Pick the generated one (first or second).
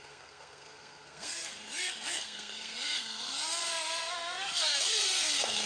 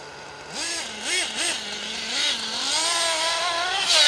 first